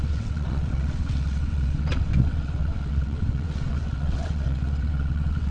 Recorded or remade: remade